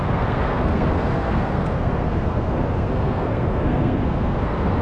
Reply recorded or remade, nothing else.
remade